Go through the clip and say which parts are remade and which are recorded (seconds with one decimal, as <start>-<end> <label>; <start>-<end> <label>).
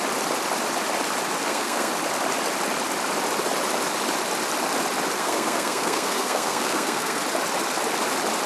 0.0-1.4 recorded; 1.4-1.9 remade; 1.9-5.2 recorded; 5.2-7.2 remade; 7.2-8.5 recorded